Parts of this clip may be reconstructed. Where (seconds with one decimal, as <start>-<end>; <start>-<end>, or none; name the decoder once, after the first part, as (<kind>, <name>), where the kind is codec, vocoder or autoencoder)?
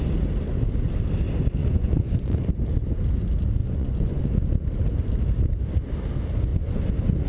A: 1.6-2.5 (vocoder, Vocos); 3.6-4.2